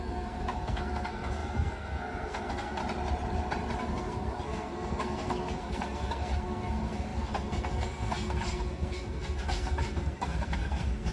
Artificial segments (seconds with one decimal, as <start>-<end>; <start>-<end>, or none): 0.0-2.8; 3.8-11.1

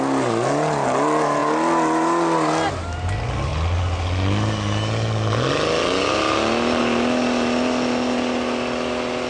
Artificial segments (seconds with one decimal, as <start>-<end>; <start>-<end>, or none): none

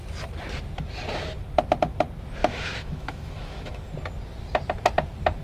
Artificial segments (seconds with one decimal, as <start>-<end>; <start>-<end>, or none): 2.4-3.9